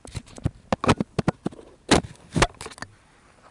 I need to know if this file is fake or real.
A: real